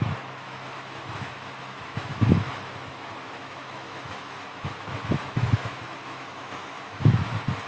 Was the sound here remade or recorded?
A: remade